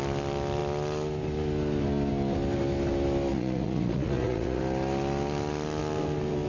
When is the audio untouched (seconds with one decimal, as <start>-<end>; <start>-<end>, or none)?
0.0-3.3; 4.6-6.5